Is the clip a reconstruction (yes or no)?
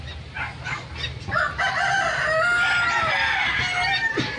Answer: no